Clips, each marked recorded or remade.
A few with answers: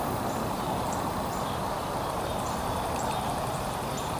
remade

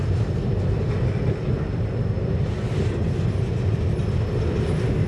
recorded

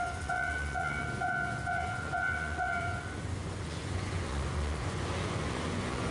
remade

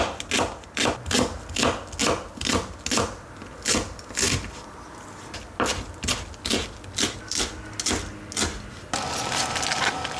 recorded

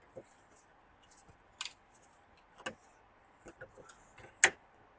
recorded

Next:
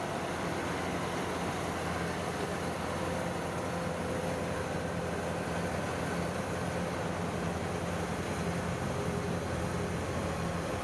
recorded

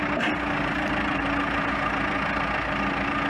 recorded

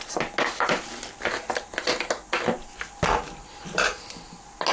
recorded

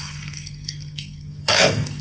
remade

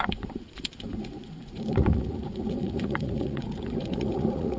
remade